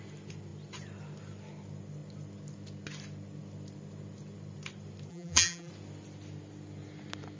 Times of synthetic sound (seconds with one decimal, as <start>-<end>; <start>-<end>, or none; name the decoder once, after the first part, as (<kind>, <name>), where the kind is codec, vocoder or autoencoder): 5.1-5.7 (vocoder, BigVGAN v2)